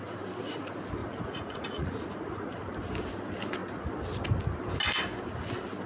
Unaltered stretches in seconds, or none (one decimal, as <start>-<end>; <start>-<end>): 0.0-1.0; 2.6-5.9